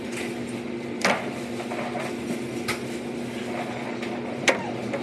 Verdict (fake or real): real